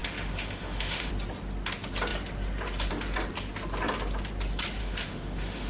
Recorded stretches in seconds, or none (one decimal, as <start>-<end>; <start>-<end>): 1.1-4.8

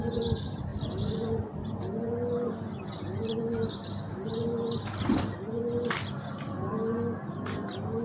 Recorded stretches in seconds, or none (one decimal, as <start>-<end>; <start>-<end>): 0.0-8.0